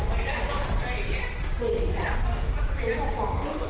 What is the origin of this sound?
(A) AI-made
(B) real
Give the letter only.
B